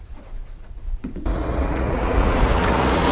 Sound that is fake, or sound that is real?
fake